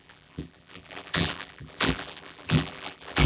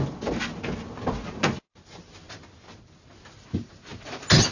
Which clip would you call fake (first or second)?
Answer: first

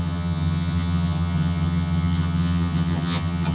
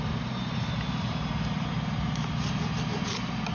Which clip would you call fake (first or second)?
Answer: first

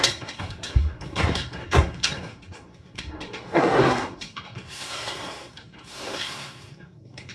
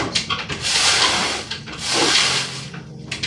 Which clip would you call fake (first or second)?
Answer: first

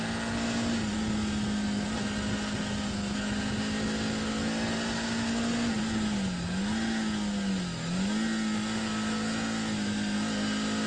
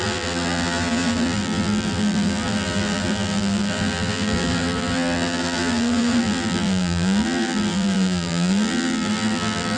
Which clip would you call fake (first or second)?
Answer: second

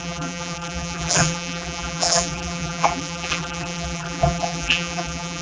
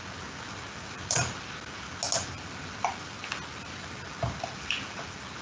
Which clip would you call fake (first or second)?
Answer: first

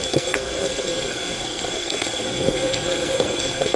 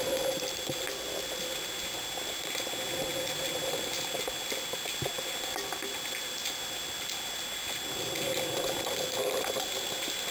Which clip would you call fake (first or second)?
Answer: first